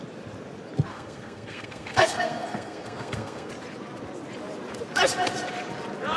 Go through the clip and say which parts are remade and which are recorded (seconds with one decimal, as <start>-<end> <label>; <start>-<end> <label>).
0.0-0.9 recorded; 0.9-3.5 remade; 3.5-6.2 recorded